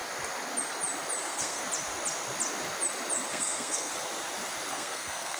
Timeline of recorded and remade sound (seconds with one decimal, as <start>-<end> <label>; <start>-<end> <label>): 0.0-1.2 recorded; 1.2-1.6 remade; 1.6-3.3 recorded; 3.3-3.9 remade; 3.9-4.7 recorded; 4.7-5.4 remade